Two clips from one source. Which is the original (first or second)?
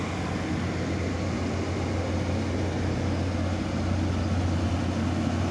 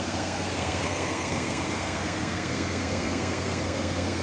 first